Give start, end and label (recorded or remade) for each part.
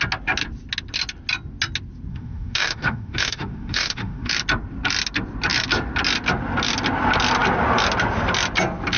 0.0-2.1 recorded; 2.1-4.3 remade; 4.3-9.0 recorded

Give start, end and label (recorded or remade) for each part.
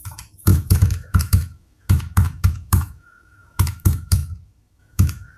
0.0-5.4 remade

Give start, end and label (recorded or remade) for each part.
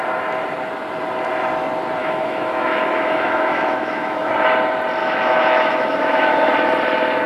0.0-2.0 recorded; 2.0-4.3 remade; 4.3-5.0 recorded; 5.0-6.5 remade; 6.5-7.3 recorded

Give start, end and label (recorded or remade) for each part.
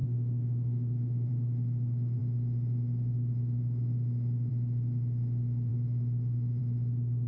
0.0-1.3 remade; 1.3-7.3 recorded